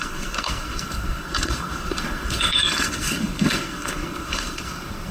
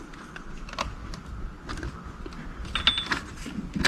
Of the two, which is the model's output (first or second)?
first